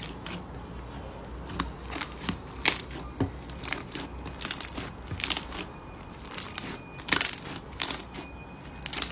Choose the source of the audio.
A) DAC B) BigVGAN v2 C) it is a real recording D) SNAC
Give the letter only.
C